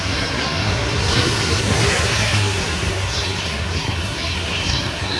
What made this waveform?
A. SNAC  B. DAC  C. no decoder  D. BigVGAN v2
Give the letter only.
A